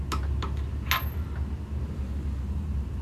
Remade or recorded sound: recorded